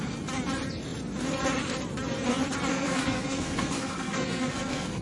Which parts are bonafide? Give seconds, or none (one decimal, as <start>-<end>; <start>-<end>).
0.0-2.7